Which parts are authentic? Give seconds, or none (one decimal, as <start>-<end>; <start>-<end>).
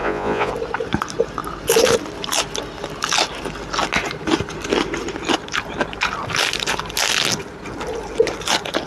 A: 0.5-8.9